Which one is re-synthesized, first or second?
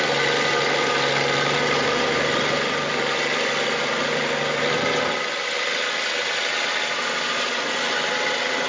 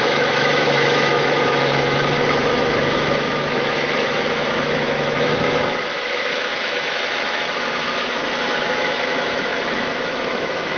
second